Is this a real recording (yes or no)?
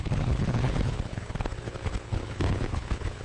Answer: no